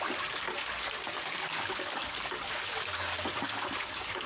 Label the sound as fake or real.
fake